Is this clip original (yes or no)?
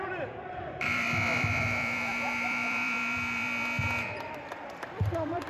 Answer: no